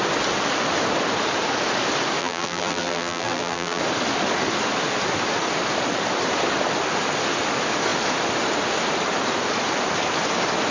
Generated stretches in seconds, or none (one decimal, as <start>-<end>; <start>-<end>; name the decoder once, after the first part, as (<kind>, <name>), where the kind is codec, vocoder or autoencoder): 2.2-3.8 (vocoder, BigVGAN v2)